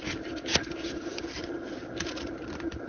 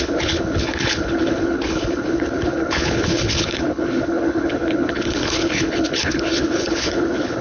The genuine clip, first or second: first